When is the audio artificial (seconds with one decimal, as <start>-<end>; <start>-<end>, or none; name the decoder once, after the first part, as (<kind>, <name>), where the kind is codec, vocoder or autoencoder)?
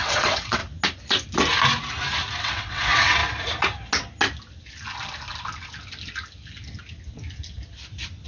0.0-0.6 (vocoder, WaveNeXt); 2.4-3.2